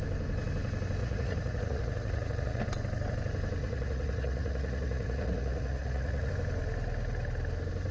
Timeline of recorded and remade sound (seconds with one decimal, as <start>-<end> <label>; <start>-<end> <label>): 0.0-1.0 recorded; 1.0-2.6 remade; 2.6-3.6 recorded; 3.6-6.3 remade; 6.3-7.9 recorded